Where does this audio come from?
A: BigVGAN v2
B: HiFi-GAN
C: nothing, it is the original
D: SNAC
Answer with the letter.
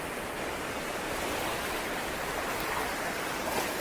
A